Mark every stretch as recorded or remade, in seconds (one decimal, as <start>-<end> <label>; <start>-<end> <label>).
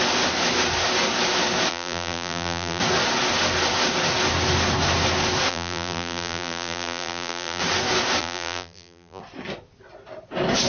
0.0-1.7 recorded; 1.7-2.8 remade; 2.8-5.5 recorded; 5.5-7.6 remade; 7.6-8.2 recorded; 8.2-9.2 remade; 9.2-10.7 recorded